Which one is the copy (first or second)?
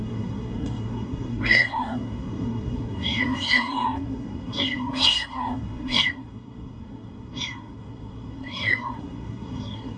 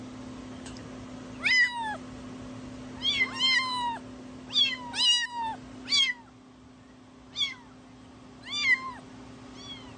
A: first